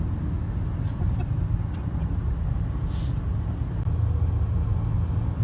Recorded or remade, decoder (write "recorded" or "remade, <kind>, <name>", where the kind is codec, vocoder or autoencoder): recorded